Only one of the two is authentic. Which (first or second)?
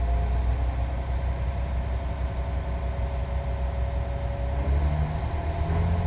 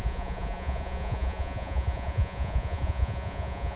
first